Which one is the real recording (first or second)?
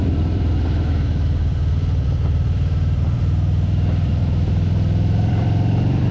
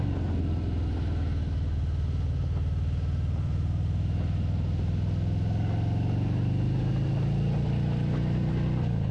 second